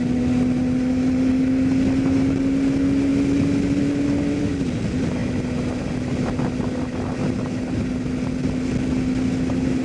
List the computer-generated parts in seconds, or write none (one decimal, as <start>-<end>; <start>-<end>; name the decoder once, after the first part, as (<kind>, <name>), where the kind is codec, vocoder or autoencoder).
none